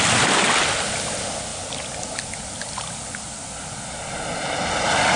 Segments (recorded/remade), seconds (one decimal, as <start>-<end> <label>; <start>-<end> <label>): 0.0-5.2 recorded